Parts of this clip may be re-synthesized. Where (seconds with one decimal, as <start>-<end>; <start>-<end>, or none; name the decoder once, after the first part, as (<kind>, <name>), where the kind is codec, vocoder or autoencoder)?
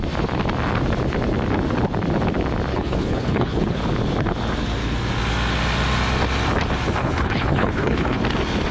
2.7-3.8 (codec, HILCodec); 7.0-8.2